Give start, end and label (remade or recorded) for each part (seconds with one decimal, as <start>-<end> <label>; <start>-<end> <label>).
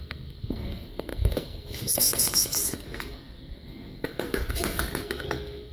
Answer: 0.0-5.7 remade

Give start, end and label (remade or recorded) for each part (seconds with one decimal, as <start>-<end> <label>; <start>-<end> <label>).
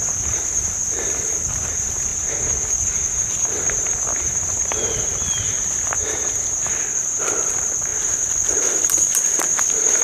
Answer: 0.0-2.1 remade; 2.1-7.2 recorded; 7.2-10.0 remade